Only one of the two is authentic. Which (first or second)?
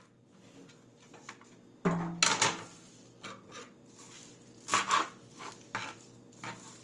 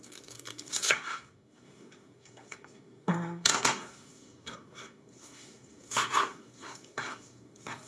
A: first